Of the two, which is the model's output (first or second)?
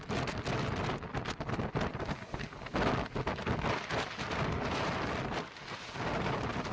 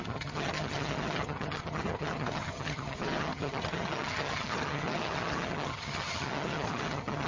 second